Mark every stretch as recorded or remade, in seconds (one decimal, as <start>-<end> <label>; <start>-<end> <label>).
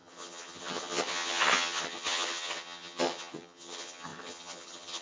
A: 0.0-5.0 remade